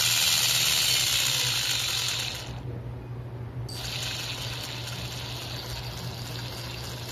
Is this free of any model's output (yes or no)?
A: yes